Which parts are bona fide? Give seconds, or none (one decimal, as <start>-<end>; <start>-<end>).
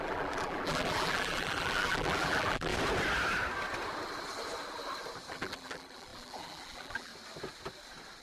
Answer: 2.7-5.3; 7.1-8.2